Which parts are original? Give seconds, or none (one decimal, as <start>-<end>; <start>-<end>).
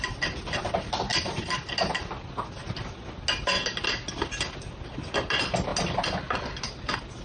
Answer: 0.0-7.2